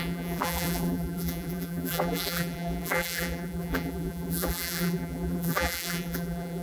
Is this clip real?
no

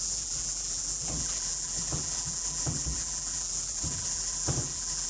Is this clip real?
no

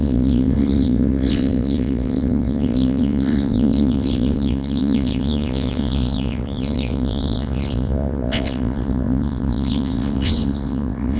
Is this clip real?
no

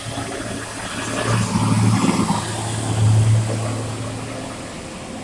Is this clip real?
yes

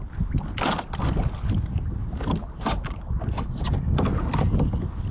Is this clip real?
yes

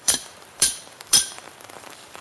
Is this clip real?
no